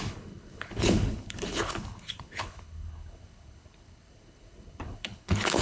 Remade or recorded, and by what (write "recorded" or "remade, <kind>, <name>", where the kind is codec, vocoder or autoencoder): remade, codec, HILCodec